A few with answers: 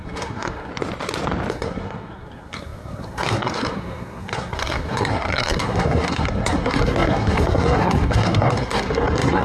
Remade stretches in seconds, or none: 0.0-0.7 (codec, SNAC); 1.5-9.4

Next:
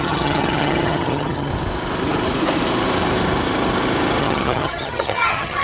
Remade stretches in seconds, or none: 0.0-1.5 (vocoder, HiFi-GAN); 4.2-5.6